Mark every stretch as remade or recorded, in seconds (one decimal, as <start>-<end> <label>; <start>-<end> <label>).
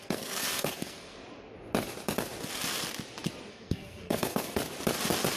0.0-1.2 remade; 1.2-3.5 recorded; 3.5-4.6 remade; 4.6-5.4 recorded